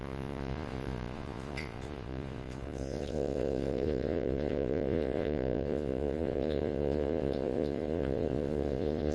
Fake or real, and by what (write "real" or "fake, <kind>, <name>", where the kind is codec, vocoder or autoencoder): fake, vocoder, Vocos